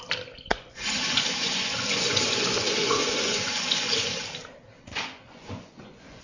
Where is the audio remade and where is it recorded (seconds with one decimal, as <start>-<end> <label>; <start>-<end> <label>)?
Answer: 0.0-0.5 recorded; 0.5-4.2 remade; 4.2-4.9 recorded; 4.9-6.2 remade